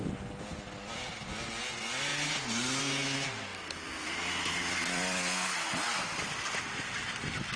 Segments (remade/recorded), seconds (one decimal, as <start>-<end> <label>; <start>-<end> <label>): 0.0-7.6 recorded

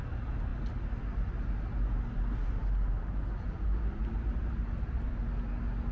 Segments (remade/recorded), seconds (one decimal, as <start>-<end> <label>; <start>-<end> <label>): 0.0-5.9 recorded

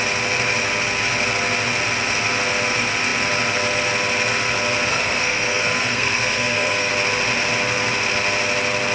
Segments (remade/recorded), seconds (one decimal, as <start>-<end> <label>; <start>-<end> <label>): 0.0-4.9 recorded; 4.9-6.9 remade; 6.9-8.9 recorded

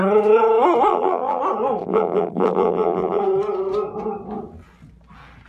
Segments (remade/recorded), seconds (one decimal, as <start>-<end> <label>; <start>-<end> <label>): 0.0-0.9 recorded; 0.9-1.4 remade; 1.4-1.8 recorded; 1.8-3.2 remade; 3.2-5.5 recorded

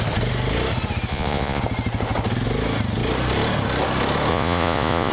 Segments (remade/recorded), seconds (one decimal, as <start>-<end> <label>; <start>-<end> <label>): 0.0-1.1 recorded; 1.1-1.6 remade; 1.6-4.3 recorded; 4.3-5.1 remade